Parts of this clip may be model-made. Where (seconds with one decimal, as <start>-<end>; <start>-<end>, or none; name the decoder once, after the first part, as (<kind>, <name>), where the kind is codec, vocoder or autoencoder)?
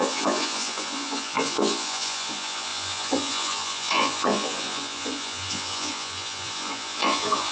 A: 0.0-7.5 (vocoder, Vocos)